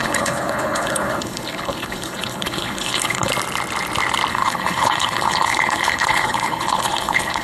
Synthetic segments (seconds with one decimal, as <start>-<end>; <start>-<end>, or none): 0.0-3.3; 4.3-7.4